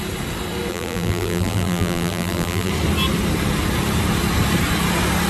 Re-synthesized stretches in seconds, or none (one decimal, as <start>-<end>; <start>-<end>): 0.7-2.7